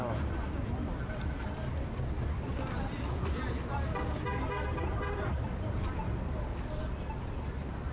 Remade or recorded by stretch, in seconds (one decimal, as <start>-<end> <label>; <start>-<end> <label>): 0.0-4.7 recorded; 4.7-6.4 remade; 6.4-7.9 recorded